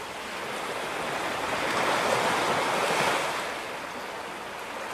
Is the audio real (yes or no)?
yes